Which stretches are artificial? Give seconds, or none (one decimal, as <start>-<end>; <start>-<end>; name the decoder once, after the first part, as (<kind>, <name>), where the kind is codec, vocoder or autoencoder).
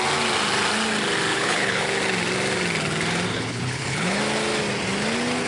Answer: 1.3-1.8 (codec, HILCodec); 3.3-4.2